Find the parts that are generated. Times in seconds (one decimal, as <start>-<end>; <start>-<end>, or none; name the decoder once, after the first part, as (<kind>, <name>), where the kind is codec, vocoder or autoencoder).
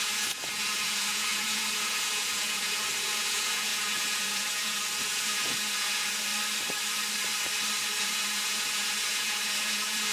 0.0-6.3 (vocoder, Vocos); 8.0-10.1